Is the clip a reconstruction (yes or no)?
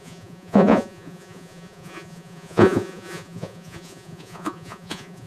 yes